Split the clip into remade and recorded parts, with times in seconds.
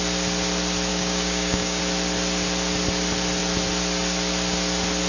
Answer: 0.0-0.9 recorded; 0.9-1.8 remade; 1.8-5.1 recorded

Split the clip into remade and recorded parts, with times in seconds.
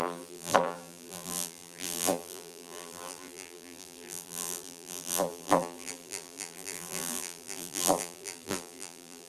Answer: 0.0-9.3 remade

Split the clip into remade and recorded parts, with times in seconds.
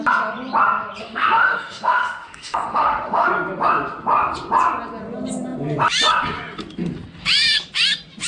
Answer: 0.0-1.0 recorded; 1.0-3.3 remade; 3.3-8.3 recorded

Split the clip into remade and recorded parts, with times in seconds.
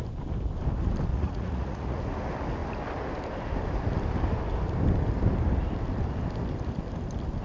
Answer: 0.0-1.1 recorded; 1.1-2.0 remade; 2.0-7.4 recorded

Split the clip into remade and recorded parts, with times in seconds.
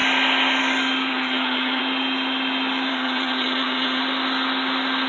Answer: 0.0-1.1 recorded; 1.1-1.8 remade; 1.8-2.9 recorded; 2.9-4.0 remade; 4.0-5.1 recorded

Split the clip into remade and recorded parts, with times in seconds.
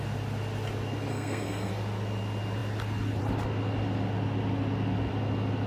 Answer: 0.0-1.1 recorded; 1.1-1.7 remade; 1.7-5.7 recorded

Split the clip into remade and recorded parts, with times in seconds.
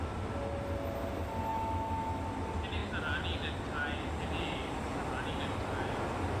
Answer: 0.0-1.5 recorded; 1.5-2.3 remade; 2.3-6.4 recorded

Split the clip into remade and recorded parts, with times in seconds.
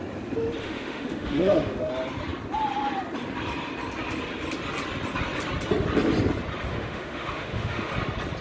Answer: 0.0-0.6 recorded; 0.6-1.9 remade; 1.9-6.7 recorded; 6.7-7.9 remade; 7.9-8.4 recorded